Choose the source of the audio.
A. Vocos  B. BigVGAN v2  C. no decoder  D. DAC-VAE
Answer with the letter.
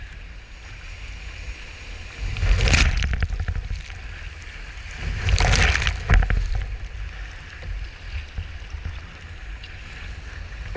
C